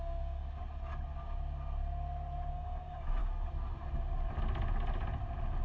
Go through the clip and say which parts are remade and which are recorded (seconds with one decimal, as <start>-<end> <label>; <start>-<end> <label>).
0.0-0.4 remade; 0.4-2.5 recorded; 2.5-3.2 remade; 3.2-5.6 recorded